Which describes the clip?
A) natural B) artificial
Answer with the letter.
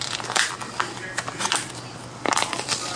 A